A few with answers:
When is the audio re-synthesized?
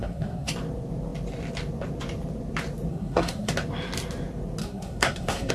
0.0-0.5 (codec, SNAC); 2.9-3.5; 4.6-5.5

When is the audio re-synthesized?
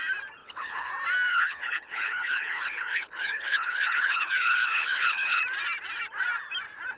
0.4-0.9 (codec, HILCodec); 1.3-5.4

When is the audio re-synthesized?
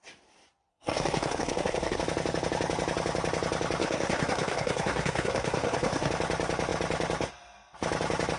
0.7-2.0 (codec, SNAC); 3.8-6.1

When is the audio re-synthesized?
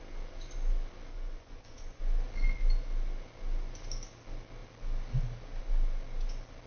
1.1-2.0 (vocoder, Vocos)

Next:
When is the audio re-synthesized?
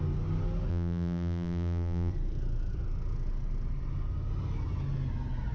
0.7-2.1 (vocoder, BigVGAN v2)